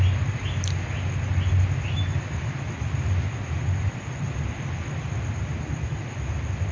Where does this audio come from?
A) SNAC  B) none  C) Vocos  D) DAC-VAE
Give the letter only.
B